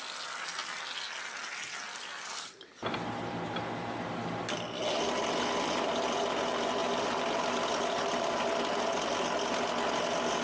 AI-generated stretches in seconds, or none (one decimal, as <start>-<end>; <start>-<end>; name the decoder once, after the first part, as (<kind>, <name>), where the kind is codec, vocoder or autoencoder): none